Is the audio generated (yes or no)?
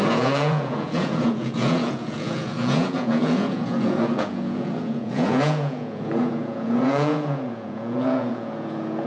yes